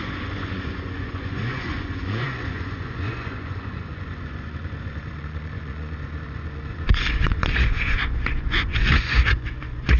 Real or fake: fake